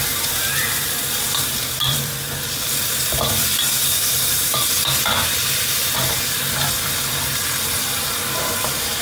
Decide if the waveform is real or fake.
fake